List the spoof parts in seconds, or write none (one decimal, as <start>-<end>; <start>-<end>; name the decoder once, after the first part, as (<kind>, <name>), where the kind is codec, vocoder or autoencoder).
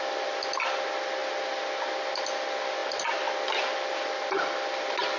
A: none